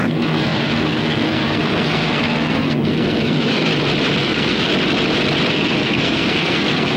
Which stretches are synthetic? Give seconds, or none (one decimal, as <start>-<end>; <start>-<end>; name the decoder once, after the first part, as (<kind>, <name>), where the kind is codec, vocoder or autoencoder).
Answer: 0.0-3.7 (codec, SNAC); 4.2-4.7; 5.5-7.0